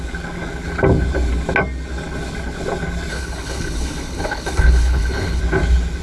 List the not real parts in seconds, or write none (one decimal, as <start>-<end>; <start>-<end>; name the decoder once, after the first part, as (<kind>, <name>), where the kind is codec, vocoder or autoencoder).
3.1-5.4 (codec, HILCodec)